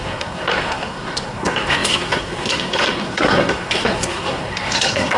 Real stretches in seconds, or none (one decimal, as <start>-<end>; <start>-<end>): none